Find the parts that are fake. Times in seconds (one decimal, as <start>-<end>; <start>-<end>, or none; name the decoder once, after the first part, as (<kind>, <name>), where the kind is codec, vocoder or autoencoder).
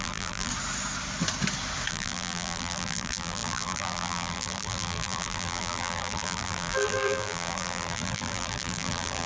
0.0-0.5 (vocoder, BigVGAN v2); 1.9-9.3